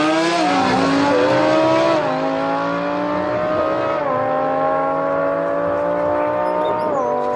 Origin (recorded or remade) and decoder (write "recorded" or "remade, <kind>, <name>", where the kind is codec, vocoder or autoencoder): recorded